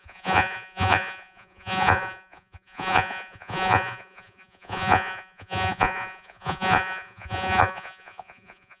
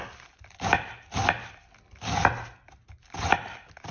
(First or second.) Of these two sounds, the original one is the second